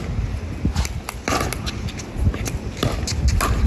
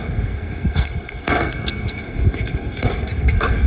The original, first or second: first